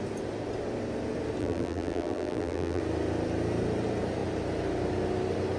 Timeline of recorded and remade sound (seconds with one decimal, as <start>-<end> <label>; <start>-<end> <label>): 0.0-1.4 recorded; 1.4-2.8 remade; 2.8-5.6 recorded